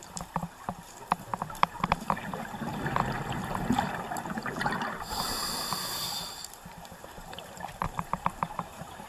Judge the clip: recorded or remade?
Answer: remade